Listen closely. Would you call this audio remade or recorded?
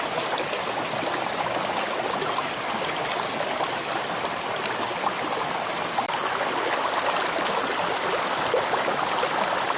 recorded